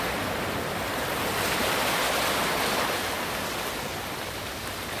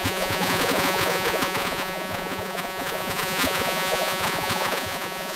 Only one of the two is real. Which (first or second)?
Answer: first